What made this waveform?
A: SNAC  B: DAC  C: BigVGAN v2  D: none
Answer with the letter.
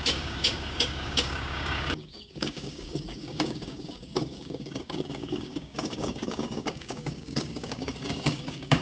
B